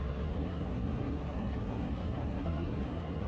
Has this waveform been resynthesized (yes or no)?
yes